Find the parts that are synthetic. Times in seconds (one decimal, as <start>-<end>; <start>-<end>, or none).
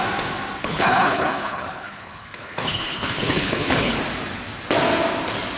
0.6-4.0